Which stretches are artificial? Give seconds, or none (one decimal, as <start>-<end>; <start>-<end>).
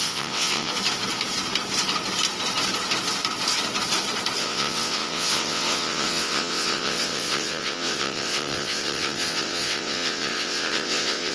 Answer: 0.0-0.7; 4.4-11.3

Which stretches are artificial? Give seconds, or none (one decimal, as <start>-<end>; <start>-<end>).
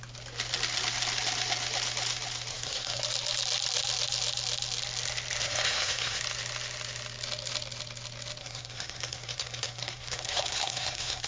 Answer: 2.5-3.0; 5.4-6.2; 8.4-11.3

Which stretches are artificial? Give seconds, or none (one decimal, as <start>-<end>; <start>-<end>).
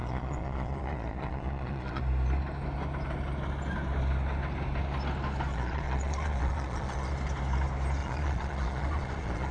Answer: 0.0-2.0; 5.5-7.1; 8.0-9.5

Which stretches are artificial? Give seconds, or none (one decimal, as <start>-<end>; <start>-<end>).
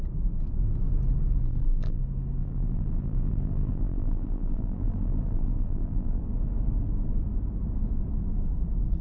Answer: 1.4-2.0; 2.4-6.2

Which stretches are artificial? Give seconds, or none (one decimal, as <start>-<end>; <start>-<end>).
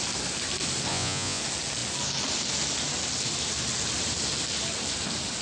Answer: 0.9-1.4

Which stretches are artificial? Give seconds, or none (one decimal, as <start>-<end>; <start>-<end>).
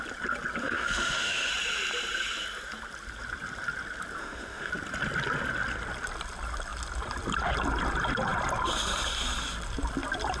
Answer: 0.6-1.5; 4.2-4.7